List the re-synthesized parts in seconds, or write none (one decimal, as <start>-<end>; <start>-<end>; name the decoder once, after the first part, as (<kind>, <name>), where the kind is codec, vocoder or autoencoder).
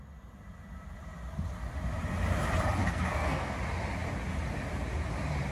2.8-3.5 (codec, SNAC)